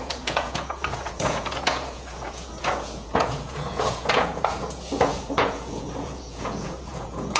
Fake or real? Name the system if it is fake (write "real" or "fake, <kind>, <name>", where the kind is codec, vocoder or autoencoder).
fake, vocoder, Vocos